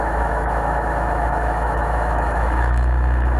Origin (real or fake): fake